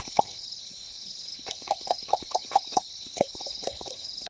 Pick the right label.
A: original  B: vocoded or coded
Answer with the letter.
B